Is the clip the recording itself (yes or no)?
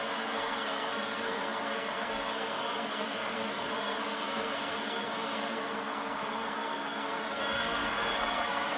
no